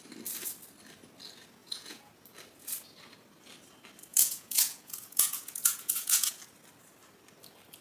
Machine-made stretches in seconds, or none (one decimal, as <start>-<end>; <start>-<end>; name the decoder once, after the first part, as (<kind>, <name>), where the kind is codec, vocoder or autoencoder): 1.6-2.1 (vocoder, Vocos); 4.1-6.4